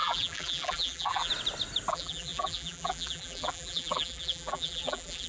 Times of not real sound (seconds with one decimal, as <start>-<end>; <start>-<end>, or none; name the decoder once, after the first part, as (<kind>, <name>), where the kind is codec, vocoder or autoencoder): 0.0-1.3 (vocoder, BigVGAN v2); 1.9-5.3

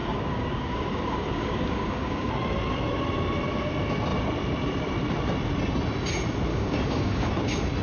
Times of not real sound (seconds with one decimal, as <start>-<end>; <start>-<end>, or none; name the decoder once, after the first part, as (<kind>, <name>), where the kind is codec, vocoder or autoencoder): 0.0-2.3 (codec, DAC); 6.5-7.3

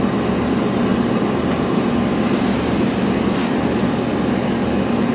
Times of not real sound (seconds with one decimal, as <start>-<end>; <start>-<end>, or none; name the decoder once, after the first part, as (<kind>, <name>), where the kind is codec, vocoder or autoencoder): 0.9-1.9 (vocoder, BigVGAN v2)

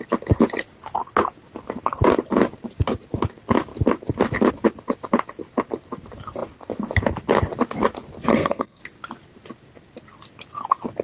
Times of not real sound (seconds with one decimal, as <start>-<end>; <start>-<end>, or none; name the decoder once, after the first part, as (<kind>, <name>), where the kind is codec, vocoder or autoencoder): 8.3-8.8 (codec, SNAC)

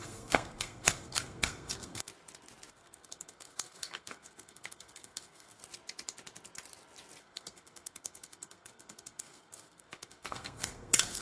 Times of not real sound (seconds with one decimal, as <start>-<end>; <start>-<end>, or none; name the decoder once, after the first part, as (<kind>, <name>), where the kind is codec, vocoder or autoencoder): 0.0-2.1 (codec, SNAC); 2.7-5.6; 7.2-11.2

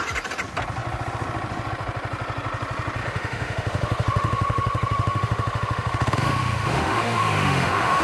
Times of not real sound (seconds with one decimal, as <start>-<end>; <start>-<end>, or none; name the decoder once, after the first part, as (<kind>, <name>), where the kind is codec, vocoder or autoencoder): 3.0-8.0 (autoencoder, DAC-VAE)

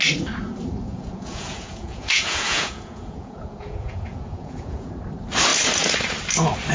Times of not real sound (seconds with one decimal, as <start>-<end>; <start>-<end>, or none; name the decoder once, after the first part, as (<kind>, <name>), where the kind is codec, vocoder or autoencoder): 0.9-4.9 (vocoder, Vocos)

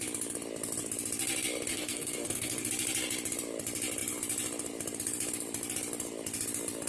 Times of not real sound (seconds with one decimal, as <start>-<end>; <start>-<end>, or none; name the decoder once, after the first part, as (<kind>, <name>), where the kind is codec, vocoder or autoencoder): 1.7-2.7 (codec, SNAC)